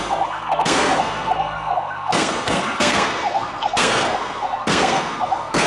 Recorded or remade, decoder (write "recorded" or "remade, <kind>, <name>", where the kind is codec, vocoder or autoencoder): remade, codec, SNAC